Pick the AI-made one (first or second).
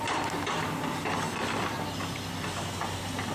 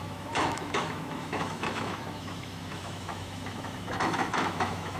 second